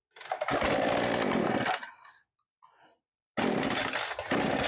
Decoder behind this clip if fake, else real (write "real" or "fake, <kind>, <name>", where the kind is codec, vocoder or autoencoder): real